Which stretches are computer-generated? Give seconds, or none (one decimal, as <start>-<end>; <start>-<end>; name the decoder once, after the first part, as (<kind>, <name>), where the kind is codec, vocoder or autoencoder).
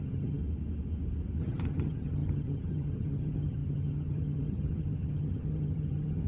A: 0.0-0.4 (vocoder, HiFi-GAN); 1.4-6.3